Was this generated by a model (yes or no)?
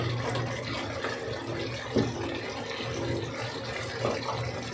no